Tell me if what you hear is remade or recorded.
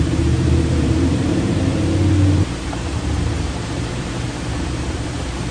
remade